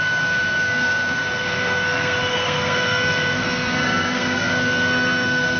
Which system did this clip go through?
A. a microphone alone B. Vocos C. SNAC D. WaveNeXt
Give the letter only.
C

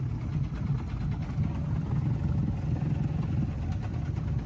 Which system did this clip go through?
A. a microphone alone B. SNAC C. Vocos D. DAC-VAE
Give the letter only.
A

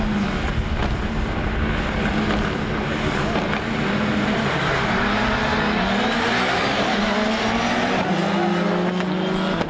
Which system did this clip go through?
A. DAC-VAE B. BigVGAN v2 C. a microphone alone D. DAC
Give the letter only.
C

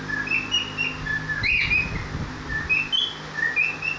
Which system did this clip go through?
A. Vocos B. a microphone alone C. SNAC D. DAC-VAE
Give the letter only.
B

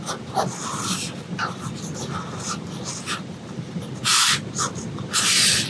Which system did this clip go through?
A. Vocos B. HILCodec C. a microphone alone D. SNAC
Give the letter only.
C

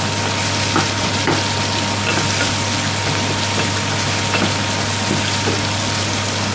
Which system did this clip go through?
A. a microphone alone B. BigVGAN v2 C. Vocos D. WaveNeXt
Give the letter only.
A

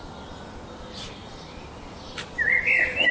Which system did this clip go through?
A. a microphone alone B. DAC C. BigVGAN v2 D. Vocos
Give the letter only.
A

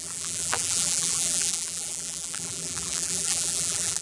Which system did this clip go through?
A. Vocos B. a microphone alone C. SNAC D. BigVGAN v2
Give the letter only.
D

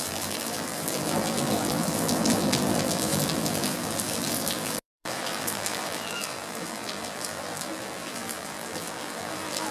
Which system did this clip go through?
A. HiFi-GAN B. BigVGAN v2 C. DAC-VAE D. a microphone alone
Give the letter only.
B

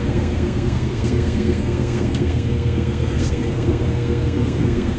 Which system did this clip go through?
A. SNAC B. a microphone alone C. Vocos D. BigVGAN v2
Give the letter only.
A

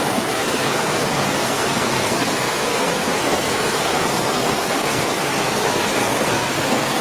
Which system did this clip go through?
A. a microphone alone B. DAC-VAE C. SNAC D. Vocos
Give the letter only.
C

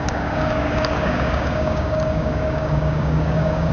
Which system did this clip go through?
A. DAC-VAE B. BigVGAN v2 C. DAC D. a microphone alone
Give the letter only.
C